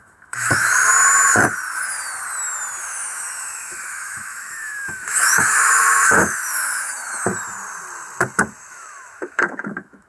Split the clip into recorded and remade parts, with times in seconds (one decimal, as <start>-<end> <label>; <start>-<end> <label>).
0.0-0.8 remade; 0.8-2.8 recorded; 2.8-6.9 remade; 6.9-8.6 recorded; 8.6-10.1 remade